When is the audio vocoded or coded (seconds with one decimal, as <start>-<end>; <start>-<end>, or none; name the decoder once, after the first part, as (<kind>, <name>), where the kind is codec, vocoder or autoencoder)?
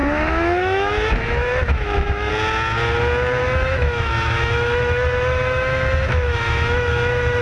0.0-2.3 (autoencoder, DAC-VAE); 3.4-7.4